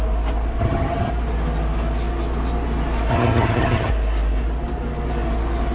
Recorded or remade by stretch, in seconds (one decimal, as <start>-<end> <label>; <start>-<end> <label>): 0.0-0.6 recorded; 0.6-1.1 remade; 1.1-3.1 recorded; 3.1-3.9 remade; 3.9-5.7 recorded